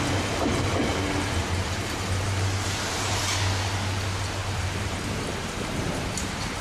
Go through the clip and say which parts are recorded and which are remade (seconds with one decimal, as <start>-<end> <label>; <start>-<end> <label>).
0.0-1.4 recorded; 1.4-3.2 remade; 3.2-4.4 recorded; 4.4-6.6 remade